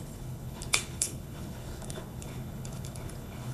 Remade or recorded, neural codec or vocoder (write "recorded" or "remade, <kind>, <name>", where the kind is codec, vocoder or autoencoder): remade, codec, HILCodec